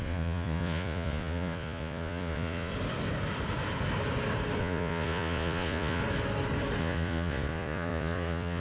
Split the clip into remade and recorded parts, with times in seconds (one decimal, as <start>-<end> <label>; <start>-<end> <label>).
0.0-2.7 remade; 2.7-4.6 recorded; 4.6-6.0 remade; 6.0-6.8 recorded; 6.8-8.6 remade